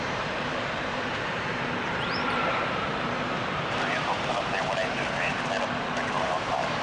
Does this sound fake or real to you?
fake